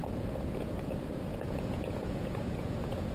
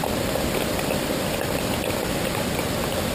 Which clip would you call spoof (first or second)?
first